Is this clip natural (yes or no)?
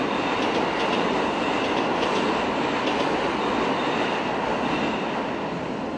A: yes